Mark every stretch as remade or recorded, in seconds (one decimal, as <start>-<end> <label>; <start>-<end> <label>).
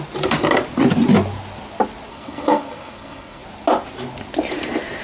0.0-2.1 recorded; 2.1-3.4 remade; 3.4-5.0 recorded